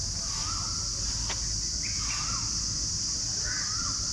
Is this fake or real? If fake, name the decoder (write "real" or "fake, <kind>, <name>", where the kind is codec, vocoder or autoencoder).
real